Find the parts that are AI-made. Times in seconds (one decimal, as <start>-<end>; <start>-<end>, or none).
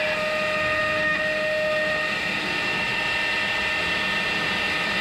none